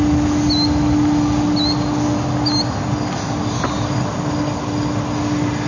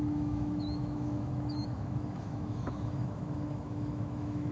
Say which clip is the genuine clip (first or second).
first